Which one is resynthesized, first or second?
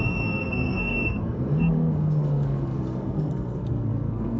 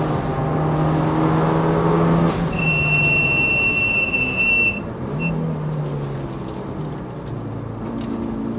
first